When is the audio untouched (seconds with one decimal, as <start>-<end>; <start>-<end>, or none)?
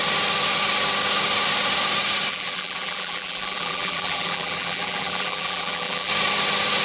0.0-2.3; 6.1-6.8